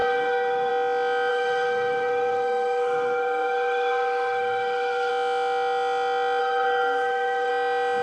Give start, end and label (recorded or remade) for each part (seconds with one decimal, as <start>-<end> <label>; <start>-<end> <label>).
0.0-0.7 remade; 0.7-1.3 recorded; 1.3-5.1 remade; 5.1-6.4 recorded; 6.4-7.5 remade; 7.5-8.0 recorded